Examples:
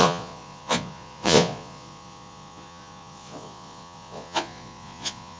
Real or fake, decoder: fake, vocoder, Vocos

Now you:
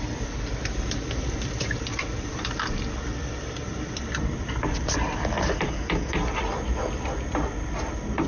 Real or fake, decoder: fake, vocoder, BigVGAN v2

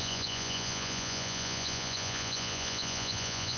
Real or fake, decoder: fake, vocoder, Vocos